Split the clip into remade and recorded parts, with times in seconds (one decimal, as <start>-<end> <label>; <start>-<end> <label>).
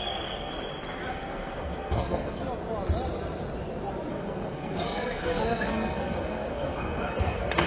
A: 0.0-0.5 remade; 0.5-1.1 recorded; 1.1-2.4 remade; 2.4-4.1 recorded; 4.1-7.7 remade